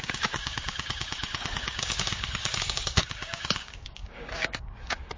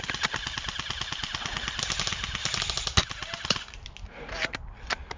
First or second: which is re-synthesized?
first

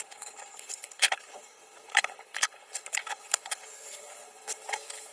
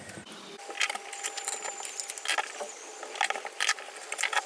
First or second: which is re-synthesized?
first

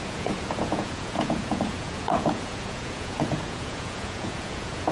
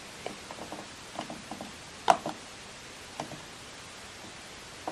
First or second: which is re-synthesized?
first